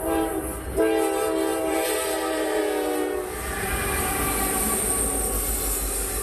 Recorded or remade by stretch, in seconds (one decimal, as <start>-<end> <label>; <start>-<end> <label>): 0.0-1.5 recorded; 1.5-2.6 remade; 2.6-6.2 recorded

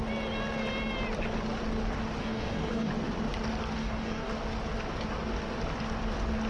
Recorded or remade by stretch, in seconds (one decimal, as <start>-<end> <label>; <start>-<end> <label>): 0.0-2.2 recorded; 2.2-2.9 remade; 2.9-3.8 recorded; 3.8-4.3 remade; 4.3-6.5 recorded

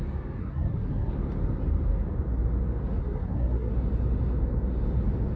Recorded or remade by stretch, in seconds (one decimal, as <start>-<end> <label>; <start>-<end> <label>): 0.0-0.4 recorded; 0.4-1.1 remade; 1.1-3.0 recorded; 3.0-3.7 remade; 3.7-5.4 recorded

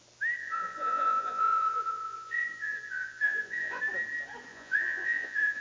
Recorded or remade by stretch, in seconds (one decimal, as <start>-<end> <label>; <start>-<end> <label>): 0.0-0.4 recorded; 0.4-3.8 remade; 3.8-4.5 recorded; 4.5-5.6 remade

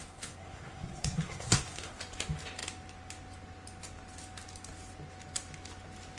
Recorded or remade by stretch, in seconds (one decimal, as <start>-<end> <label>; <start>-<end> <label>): 0.0-2.0 remade; 2.0-6.2 recorded